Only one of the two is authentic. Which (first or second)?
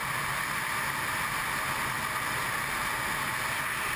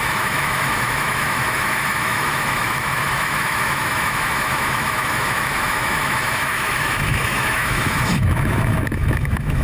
first